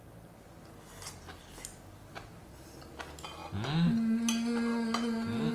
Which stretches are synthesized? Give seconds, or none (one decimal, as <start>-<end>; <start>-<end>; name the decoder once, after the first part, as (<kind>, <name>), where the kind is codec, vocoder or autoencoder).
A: none